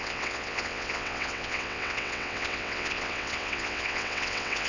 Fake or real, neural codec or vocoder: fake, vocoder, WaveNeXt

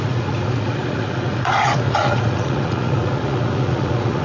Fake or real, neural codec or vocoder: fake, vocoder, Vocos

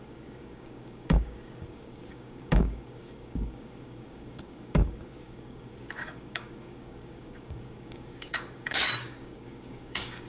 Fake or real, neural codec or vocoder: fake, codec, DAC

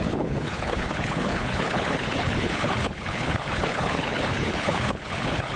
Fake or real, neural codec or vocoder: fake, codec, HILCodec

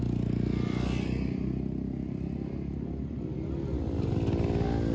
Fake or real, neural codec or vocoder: real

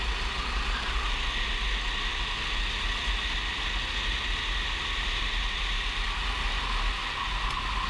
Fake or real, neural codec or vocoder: real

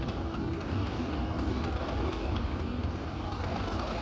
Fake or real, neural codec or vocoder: fake, codec, DAC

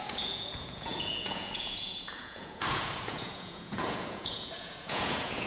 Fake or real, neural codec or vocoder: fake, vocoder, Vocos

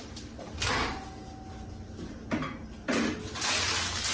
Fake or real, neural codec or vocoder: real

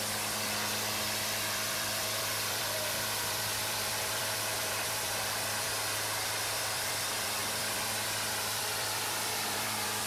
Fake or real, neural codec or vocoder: fake, vocoder, BigVGAN v2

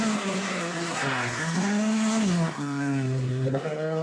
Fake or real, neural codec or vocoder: fake, codec, SNAC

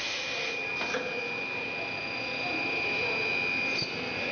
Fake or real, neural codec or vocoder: real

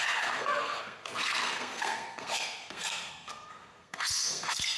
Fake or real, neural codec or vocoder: fake, codec, SNAC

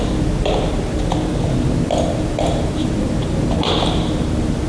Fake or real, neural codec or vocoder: real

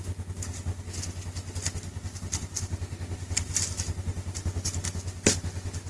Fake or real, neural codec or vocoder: real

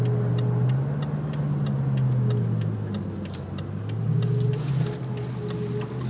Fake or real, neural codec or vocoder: real